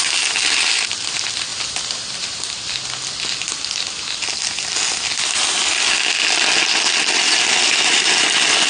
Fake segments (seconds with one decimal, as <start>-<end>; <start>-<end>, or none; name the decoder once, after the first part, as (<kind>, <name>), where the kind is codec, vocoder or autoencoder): 1.5-2.7 (vocoder, BigVGAN v2)